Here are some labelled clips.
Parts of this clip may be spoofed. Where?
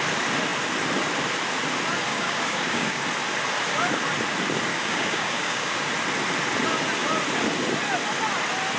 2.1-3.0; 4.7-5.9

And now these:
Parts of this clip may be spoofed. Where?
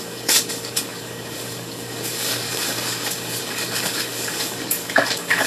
0.0-5.5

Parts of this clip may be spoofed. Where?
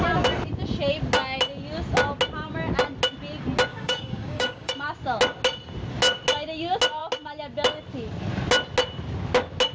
3.7-4.7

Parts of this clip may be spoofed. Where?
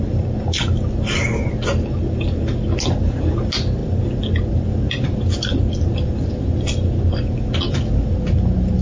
none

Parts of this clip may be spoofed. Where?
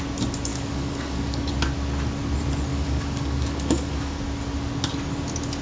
0.5-1.5; 2.7-4.2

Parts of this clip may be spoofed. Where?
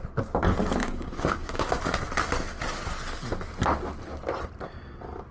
0.8-1.8